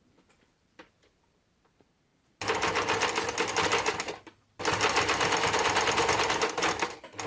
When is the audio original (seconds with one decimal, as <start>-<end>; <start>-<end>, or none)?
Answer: 0.0-7.3